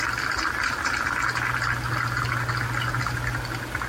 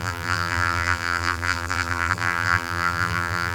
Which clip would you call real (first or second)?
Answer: first